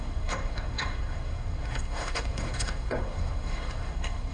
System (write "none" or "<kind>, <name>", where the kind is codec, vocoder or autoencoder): codec, SNAC